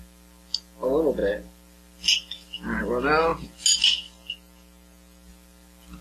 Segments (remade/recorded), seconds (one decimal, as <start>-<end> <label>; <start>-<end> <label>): 0.0-6.0 recorded